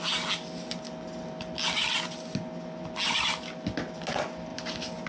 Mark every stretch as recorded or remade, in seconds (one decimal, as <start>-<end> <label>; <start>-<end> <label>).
0.0-5.1 recorded